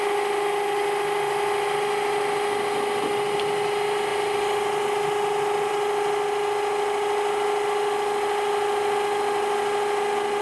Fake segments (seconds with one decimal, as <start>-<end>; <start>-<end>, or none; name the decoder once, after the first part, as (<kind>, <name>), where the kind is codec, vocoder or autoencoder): none